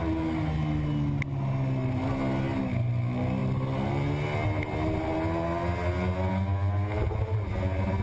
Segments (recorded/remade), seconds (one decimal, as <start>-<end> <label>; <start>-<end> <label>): 0.0-8.0 recorded